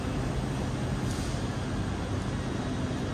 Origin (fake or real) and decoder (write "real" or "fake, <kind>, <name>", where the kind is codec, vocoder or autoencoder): real